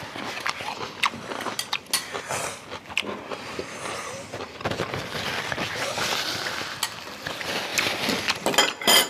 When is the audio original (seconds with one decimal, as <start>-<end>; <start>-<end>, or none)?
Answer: 0.0-9.1

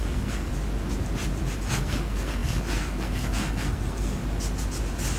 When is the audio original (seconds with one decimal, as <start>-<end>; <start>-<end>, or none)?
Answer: 0.5-1.7; 4.2-5.2

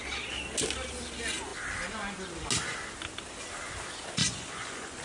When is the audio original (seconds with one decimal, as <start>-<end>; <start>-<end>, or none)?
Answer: 0.0-4.2

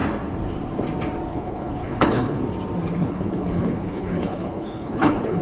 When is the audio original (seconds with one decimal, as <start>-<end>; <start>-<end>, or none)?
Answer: 0.0-1.3; 2.4-3.0

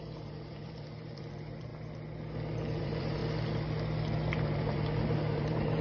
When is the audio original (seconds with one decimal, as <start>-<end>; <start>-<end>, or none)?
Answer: 1.7-2.8; 3.2-4.3

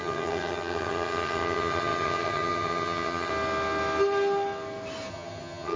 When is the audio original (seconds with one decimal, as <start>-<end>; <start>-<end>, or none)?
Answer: 3.3-5.1

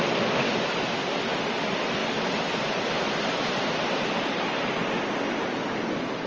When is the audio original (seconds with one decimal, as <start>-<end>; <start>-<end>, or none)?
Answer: 0.0-6.3

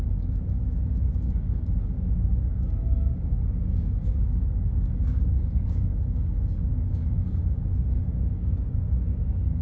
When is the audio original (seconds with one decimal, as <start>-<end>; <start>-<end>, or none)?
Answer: none